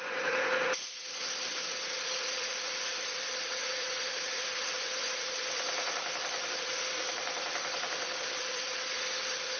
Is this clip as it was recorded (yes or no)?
yes